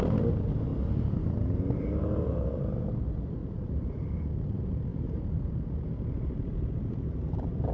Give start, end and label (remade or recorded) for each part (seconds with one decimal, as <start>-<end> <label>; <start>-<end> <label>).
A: 0.0-0.7 recorded; 0.7-2.9 remade; 2.9-3.4 recorded; 3.4-4.1 remade; 4.1-4.9 recorded; 4.9-7.7 remade